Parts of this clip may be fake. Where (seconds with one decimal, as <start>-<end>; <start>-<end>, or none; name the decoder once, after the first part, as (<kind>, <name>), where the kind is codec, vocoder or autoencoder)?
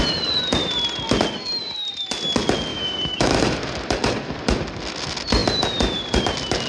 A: 2.7-3.4 (autoencoder, DAC-VAE)